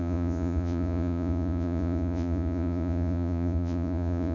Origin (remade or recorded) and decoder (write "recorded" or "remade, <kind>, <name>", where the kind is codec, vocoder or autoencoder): remade, vocoder, Vocos